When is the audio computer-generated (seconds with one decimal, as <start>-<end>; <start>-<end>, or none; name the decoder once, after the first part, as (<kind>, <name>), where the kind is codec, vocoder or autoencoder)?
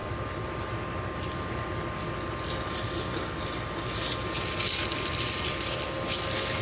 none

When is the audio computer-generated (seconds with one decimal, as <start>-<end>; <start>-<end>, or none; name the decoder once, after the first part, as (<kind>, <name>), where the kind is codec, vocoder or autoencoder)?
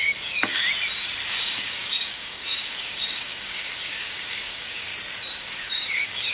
0.0-0.6 (codec, DAC); 1.3-4.9; 5.4-6.3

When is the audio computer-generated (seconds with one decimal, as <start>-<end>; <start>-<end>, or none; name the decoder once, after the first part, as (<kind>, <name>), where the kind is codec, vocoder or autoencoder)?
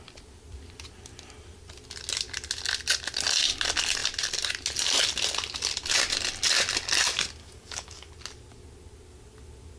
7.4-8.1 (codec, DAC)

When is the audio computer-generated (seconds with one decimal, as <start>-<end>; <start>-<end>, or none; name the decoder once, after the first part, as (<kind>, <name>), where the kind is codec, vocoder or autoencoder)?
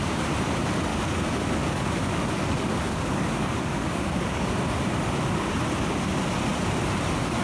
0.9-4.5 (codec, DAC)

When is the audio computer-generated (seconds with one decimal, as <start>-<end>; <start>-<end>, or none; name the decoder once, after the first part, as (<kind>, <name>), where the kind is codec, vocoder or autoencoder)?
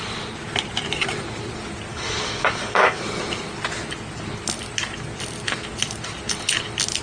1.9-3.0 (codec, DAC)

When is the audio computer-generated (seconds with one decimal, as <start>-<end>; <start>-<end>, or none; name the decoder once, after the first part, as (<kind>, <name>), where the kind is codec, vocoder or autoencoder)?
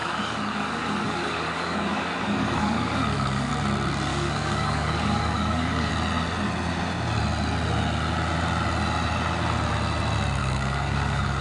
0.0-3.5 (codec, DAC); 4.1-5.9; 10.4-11.4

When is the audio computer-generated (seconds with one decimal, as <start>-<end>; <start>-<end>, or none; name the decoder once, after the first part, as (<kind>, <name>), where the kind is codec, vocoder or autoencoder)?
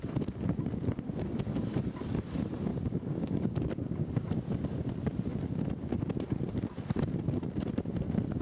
2.7-4.1 (codec, DAC)